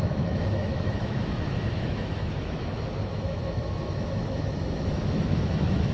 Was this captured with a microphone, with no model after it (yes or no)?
no